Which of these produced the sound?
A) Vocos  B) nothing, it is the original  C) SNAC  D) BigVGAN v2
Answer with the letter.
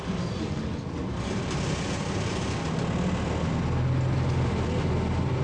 B